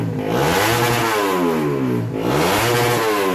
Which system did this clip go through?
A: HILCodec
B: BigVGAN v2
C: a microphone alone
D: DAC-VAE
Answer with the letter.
C